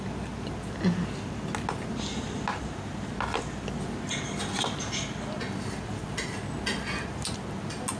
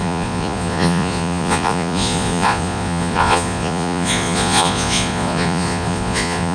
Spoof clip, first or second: second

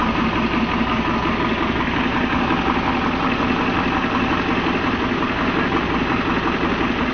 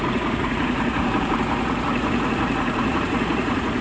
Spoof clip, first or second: second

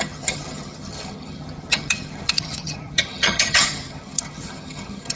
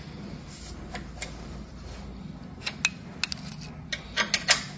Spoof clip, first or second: first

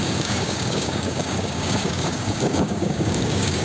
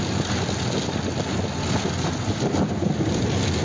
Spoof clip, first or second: first